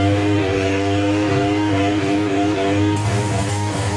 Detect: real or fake fake